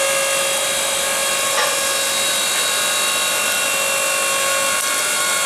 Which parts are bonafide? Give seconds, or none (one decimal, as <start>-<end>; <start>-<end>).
0.0-5.5